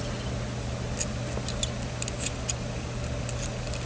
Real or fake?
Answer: real